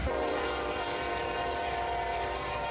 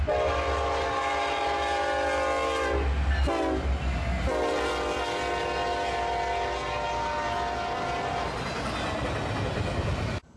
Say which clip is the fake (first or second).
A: first